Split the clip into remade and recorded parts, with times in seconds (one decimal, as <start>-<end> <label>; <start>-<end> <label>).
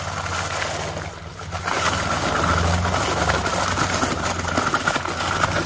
0.0-5.7 recorded